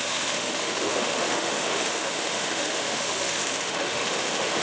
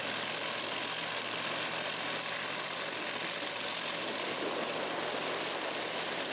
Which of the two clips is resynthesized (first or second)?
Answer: first